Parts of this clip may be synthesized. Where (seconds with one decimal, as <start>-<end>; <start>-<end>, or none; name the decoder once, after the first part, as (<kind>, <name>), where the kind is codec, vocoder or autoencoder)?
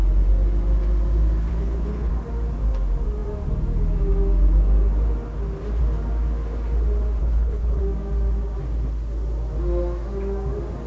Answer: 1.5-2.1 (codec, HILCodec); 7.2-7.8